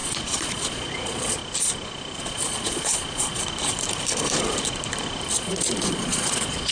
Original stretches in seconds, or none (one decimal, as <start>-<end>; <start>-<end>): 1.4-2.2; 3.4-5.3